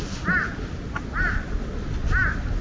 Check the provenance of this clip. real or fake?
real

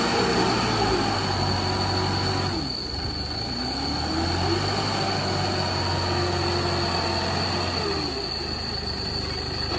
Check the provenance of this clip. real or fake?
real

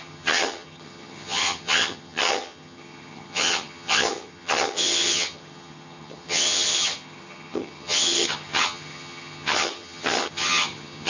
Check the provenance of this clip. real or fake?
fake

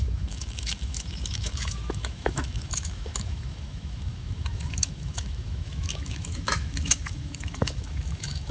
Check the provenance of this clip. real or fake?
fake